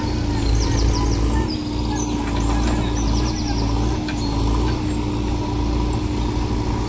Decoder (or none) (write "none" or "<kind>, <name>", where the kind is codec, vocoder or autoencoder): none